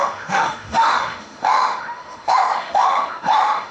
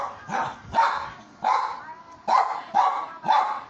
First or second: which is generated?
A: first